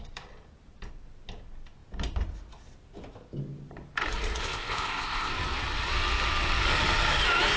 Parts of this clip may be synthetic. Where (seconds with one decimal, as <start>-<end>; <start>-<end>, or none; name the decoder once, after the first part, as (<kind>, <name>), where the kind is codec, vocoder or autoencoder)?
4.4-5.3 (codec, ZipCodec)